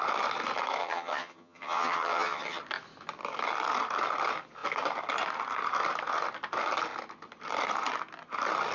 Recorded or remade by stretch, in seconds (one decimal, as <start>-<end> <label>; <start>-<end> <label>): 0.0-0.8 recorded; 0.8-2.6 remade; 2.6-8.7 recorded

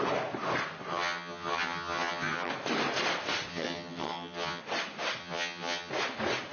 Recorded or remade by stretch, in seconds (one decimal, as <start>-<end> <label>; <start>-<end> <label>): 0.0-0.9 recorded; 0.9-2.5 remade; 2.5-3.5 recorded; 3.5-4.6 remade; 4.6-5.2 recorded; 5.2-5.9 remade; 5.9-6.5 recorded

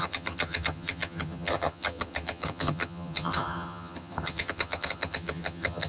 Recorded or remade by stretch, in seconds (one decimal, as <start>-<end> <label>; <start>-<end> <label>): 0.0-5.9 remade

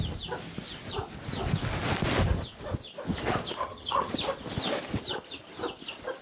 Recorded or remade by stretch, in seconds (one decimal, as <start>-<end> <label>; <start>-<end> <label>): 0.0-3.6 recorded; 3.6-4.1 remade; 4.1-6.2 recorded

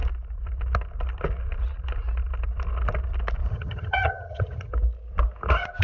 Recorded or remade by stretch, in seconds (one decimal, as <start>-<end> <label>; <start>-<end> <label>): 0.0-3.5 recorded; 3.5-4.7 remade; 4.7-5.8 recorded

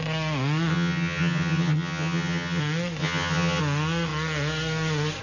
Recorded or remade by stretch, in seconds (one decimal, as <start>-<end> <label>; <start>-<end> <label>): 0.0-0.7 recorded; 0.7-2.6 remade; 2.6-3.0 recorded; 3.0-3.6 remade; 3.6-5.2 recorded

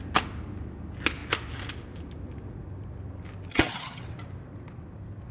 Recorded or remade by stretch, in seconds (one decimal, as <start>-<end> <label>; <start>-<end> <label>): 0.0-3.5 recorded; 3.5-4.0 remade; 4.0-5.3 recorded

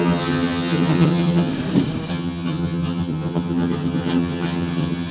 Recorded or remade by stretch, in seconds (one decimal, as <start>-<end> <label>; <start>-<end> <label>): 0.0-1.5 remade; 1.5-2.1 recorded; 2.1-5.1 remade